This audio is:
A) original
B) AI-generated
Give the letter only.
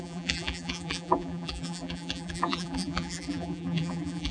B